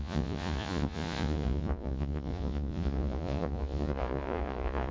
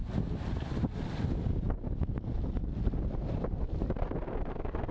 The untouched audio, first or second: second